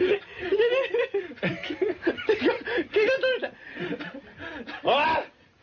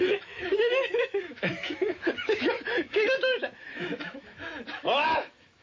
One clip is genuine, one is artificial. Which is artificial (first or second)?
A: second